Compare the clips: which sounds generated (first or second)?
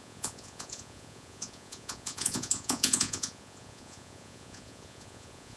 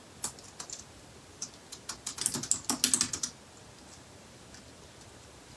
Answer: first